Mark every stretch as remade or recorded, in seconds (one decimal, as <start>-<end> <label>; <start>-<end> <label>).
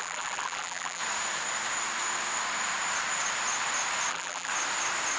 0.0-1.0 remade; 1.0-4.1 recorded; 4.1-4.5 remade; 4.5-5.2 recorded